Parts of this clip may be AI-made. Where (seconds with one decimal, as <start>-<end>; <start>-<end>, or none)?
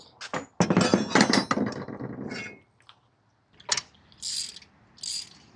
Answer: none